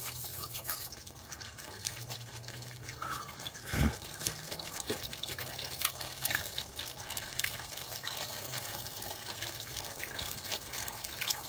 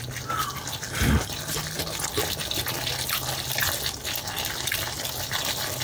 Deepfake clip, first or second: first